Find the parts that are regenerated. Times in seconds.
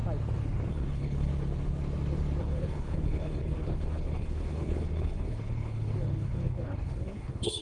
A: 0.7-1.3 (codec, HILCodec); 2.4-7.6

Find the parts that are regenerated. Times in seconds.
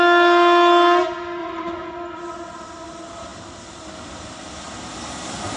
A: 1.4-1.9 (vocoder, Vocos)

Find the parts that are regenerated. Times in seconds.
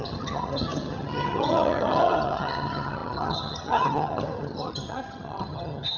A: 0.0-6.0 (vocoder, HiFi-GAN)